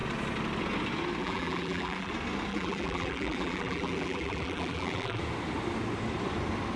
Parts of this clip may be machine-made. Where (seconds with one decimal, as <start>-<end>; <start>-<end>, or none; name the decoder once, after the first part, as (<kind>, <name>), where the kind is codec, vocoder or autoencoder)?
1.2-2.1 (vocoder, BigVGAN v2); 2.5-5.2